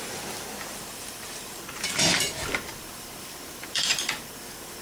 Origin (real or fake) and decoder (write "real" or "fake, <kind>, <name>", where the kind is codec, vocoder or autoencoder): fake, vocoder, BigVGAN v2